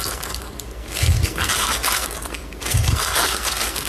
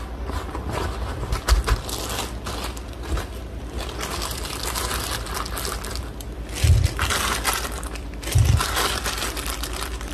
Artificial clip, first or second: first